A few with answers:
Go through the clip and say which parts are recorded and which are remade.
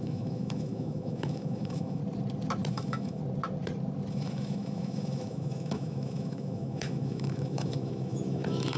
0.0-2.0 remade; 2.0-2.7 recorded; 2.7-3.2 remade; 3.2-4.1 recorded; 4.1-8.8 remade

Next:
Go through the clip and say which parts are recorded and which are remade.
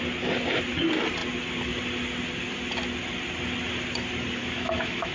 0.0-4.4 recorded; 4.4-5.1 remade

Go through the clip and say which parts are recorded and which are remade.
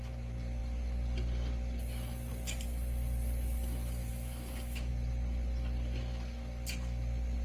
0.0-4.1 recorded; 4.1-4.9 remade; 4.9-7.4 recorded